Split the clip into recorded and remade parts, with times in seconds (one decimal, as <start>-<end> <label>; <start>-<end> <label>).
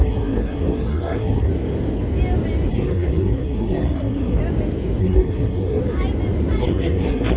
0.0-1.5 remade; 1.5-2.7 recorded; 2.7-4.4 remade; 4.4-5.0 recorded; 5.0-5.8 remade; 5.8-6.6 recorded; 6.6-7.4 remade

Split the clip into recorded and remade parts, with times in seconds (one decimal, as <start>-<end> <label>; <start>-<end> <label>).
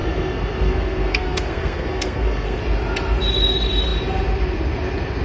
0.0-2.6 remade; 2.6-5.2 recorded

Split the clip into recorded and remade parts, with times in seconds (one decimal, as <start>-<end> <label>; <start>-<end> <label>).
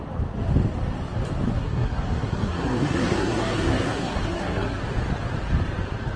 0.0-1.5 recorded; 1.5-4.8 remade; 4.8-6.2 recorded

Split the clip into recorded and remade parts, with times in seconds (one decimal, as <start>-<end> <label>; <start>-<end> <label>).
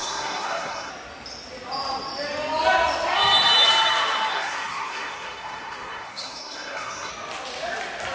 0.0-0.9 remade; 0.9-4.3 recorded; 4.3-7.1 remade; 7.1-8.1 recorded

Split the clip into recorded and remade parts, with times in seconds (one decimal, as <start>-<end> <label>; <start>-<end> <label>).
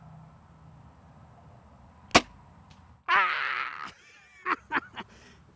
0.0-5.6 recorded